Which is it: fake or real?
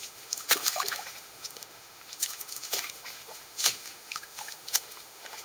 fake